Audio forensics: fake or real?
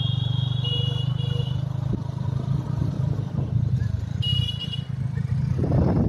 real